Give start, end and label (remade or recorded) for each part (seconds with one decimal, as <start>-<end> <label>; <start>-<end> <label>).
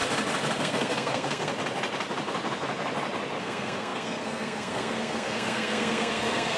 0.0-0.6 recorded; 0.6-1.5 remade; 1.5-3.4 recorded; 3.4-6.6 remade